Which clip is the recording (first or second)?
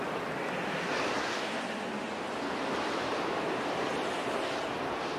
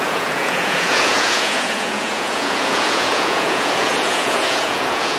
first